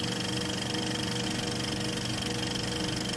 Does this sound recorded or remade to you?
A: recorded